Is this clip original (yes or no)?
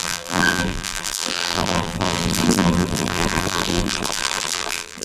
no